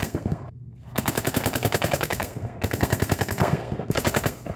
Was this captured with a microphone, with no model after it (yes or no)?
no